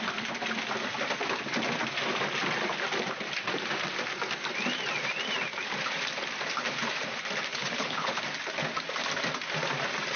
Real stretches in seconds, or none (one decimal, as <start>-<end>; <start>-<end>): 0.0-7.5; 8.2-10.2